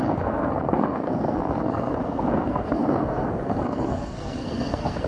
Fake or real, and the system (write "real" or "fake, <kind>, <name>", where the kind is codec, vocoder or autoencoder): fake, codec, SNAC